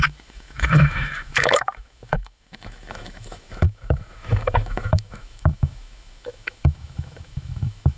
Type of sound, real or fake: fake